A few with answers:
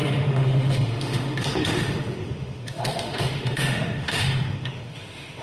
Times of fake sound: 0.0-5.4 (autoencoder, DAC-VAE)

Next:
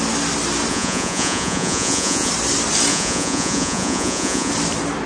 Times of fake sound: 0.7-2.3 (vocoder, Vocos); 2.9-4.5

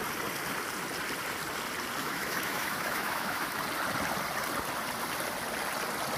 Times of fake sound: 2.0-3.6 (autoencoder, DAC-VAE)

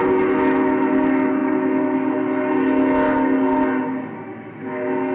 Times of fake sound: none

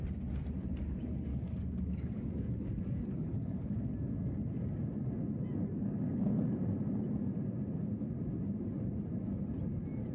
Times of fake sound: 1.3-3.7 (codec, DAC); 5.5-6.4

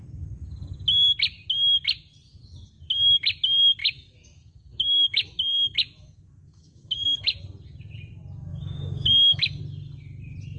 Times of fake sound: 3.8-7.4 (autoencoder, DAC-VAE); 8.5-9.6